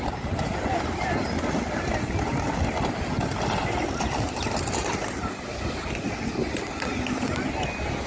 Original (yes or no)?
yes